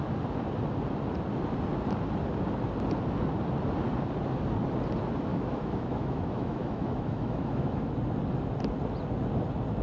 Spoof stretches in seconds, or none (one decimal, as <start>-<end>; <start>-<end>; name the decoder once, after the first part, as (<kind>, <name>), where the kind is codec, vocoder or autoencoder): 5.3-7.9 (autoencoder, DAC-VAE)